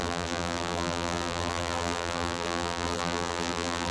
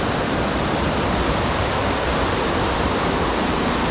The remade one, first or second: first